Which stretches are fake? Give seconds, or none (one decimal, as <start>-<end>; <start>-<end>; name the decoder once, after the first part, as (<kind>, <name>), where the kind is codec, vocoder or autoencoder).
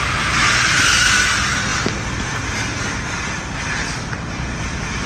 none